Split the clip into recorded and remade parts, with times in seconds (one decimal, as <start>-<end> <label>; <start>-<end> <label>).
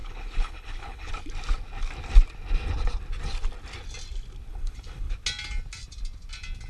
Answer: 0.0-1.1 remade; 1.1-4.5 recorded; 4.5-5.1 remade; 5.1-6.7 recorded